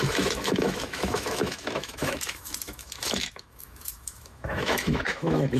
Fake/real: fake